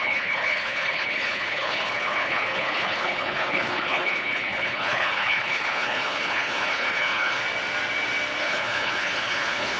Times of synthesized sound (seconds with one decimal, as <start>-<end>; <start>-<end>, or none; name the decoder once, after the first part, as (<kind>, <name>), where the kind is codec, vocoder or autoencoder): 0.0-7.4 (codec, HILCodec); 8.4-9.8